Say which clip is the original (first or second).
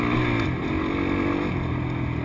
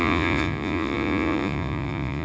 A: first